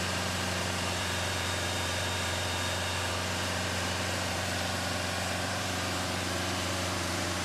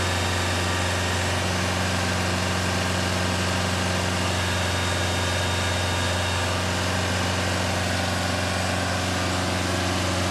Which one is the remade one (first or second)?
first